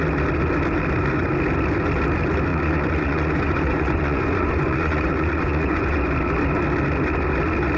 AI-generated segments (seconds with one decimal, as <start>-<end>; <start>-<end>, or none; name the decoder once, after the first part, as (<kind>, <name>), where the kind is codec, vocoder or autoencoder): 2.5-6.0 (vocoder, Vocos)